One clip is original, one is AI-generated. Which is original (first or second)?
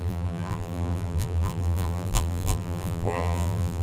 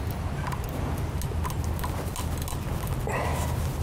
second